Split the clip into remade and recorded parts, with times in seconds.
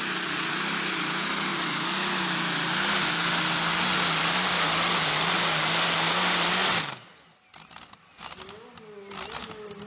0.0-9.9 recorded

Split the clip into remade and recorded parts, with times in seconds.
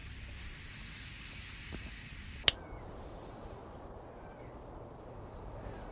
0.0-0.7 recorded; 0.7-2.1 remade; 2.1-3.1 recorded; 3.1-3.6 remade; 3.6-5.0 recorded; 5.0-5.9 remade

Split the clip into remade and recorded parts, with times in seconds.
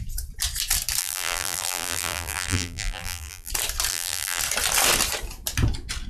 0.0-1.0 recorded; 1.0-3.5 remade; 3.5-3.9 recorded; 3.9-4.4 remade; 4.4-6.1 recorded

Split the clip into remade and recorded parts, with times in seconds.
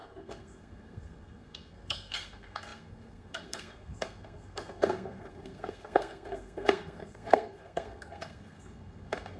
0.0-9.4 remade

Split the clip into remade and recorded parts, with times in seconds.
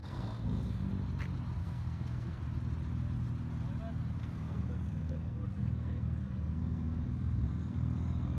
0.0-0.9 remade; 0.9-1.6 recorded; 1.6-2.4 remade; 2.4-4.2 recorded; 4.2-8.4 remade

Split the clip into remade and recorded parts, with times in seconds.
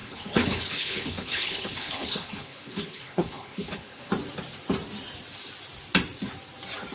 0.0-4.1 remade; 4.1-6.9 recorded